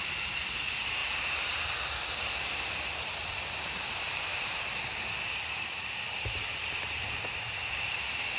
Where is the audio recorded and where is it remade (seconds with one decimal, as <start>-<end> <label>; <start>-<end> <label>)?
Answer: 0.0-4.9 remade; 4.9-5.4 recorded; 5.4-6.4 remade; 6.4-7.6 recorded; 7.6-8.4 remade